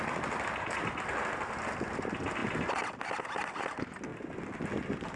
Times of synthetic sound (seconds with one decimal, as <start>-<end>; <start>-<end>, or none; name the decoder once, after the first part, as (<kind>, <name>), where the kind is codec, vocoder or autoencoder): none